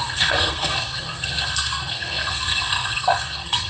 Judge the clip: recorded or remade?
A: remade